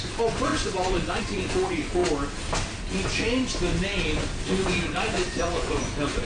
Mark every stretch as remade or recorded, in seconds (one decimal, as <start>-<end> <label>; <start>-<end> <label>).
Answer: 0.0-2.0 remade; 2.0-4.7 recorded; 4.7-6.2 remade